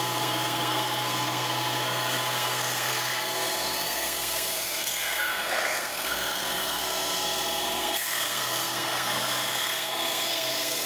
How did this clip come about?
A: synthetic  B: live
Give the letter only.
A